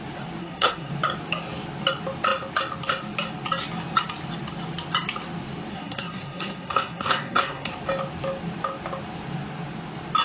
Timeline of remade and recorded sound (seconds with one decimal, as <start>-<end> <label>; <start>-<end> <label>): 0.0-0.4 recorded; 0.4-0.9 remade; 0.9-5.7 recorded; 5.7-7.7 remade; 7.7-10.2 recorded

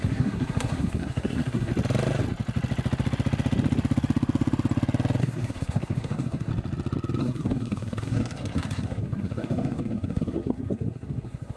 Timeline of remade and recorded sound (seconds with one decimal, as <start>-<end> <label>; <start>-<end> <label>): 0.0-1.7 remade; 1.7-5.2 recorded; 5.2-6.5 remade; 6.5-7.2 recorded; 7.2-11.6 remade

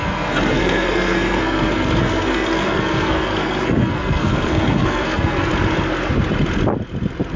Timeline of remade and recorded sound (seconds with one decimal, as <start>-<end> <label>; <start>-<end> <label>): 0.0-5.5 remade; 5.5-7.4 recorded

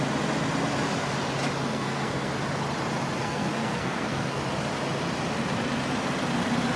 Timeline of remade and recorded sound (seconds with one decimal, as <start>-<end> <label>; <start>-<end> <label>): 0.0-1.6 recorded; 1.6-2.3 remade; 2.3-3.2 recorded; 3.2-4.4 remade; 4.4-6.8 recorded

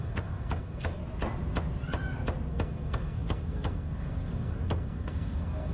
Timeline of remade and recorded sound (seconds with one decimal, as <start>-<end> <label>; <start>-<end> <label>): 0.0-1.0 remade; 1.0-2.5 recorded; 2.5-5.7 remade

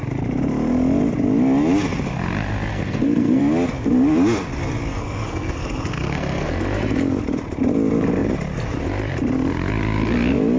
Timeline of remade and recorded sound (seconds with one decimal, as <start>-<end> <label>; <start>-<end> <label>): 0.0-2.7 recorded; 2.7-3.4 remade; 3.4-4.9 recorded; 4.9-6.5 remade; 6.5-10.6 recorded

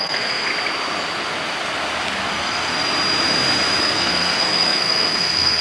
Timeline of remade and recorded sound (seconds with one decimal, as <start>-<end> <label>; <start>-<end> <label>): 0.0-0.5 remade; 0.5-2.3 recorded; 2.3-2.7 remade; 2.7-3.8 recorded; 3.8-5.6 remade